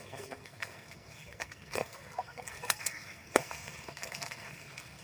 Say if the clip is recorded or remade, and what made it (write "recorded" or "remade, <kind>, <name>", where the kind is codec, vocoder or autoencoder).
remade, codec, SNAC